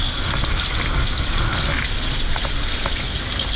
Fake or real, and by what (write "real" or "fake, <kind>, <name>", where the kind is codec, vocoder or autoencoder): real